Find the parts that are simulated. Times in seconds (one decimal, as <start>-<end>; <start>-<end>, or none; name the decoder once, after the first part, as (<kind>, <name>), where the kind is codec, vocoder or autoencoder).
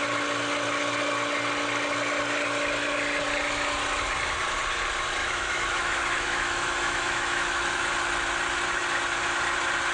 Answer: 5.2-7.8 (autoencoder, DAC-VAE)